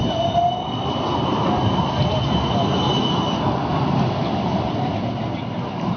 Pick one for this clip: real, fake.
real